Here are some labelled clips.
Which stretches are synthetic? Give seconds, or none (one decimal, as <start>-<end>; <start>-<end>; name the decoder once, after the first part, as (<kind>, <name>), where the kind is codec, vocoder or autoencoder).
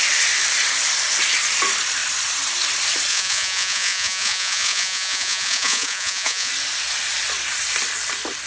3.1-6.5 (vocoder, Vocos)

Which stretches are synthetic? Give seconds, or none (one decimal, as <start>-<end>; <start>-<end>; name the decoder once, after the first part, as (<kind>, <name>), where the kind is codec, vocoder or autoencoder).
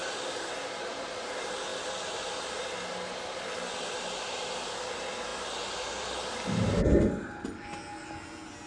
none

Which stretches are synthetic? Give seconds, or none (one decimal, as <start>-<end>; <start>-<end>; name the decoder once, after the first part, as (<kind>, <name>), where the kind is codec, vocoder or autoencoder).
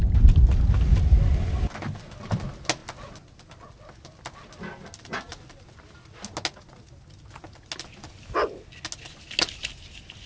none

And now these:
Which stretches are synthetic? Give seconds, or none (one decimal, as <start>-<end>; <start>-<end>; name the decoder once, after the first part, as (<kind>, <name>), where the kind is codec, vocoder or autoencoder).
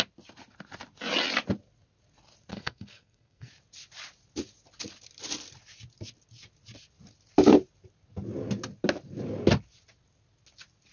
2.5-3.5 (codec, SNAC)